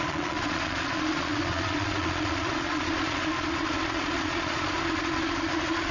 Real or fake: fake